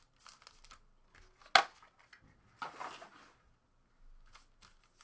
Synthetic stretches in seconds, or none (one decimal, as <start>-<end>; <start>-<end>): none